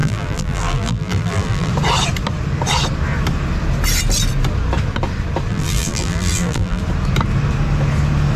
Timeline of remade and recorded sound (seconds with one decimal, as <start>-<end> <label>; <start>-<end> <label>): 0.0-1.7 remade; 1.7-5.5 recorded; 5.5-6.8 remade; 6.8-8.4 recorded